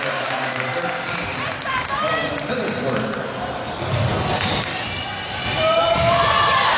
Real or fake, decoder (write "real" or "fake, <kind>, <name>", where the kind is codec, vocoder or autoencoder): real